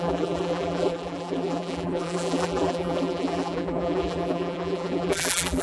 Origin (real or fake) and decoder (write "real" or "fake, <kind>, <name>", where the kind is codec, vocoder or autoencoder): fake, vocoder, BigVGAN v2